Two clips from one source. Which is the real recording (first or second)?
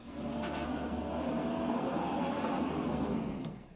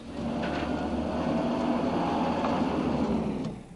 second